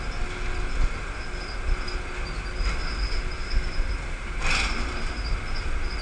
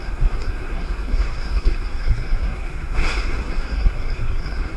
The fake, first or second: second